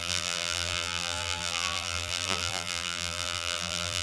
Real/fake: fake